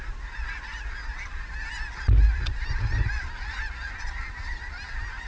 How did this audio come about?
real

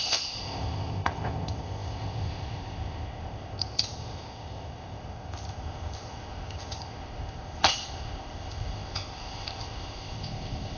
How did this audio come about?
fake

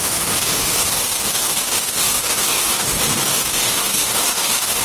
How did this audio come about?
fake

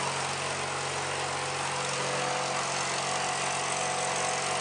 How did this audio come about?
real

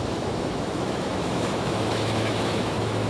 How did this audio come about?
fake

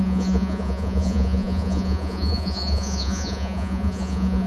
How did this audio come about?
fake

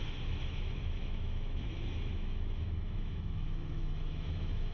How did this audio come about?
fake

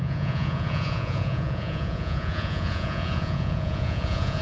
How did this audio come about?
fake